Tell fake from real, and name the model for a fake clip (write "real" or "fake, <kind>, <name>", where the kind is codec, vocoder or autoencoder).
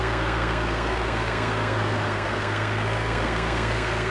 fake, codec, SNAC